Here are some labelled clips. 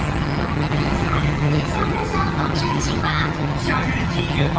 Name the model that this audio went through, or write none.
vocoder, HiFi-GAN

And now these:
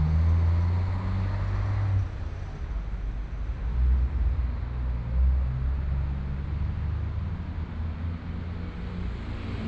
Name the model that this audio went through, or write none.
none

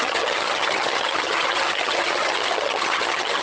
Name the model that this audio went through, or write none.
vocoder, HiFi-GAN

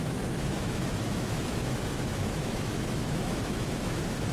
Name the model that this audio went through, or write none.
autoencoder, DAC-VAE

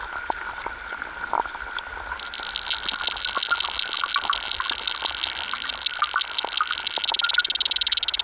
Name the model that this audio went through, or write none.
none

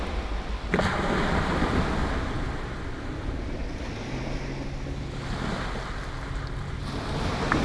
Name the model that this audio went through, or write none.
none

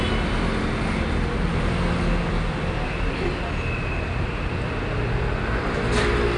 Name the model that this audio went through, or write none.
none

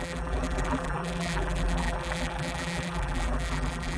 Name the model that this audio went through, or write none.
vocoder, BigVGAN v2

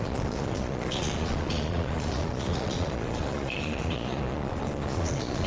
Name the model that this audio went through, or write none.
vocoder, Vocos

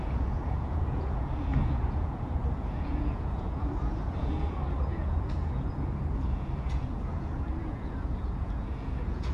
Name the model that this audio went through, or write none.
vocoder, Vocos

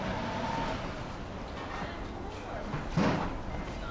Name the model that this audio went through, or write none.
none